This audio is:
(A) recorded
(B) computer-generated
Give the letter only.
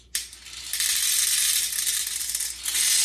A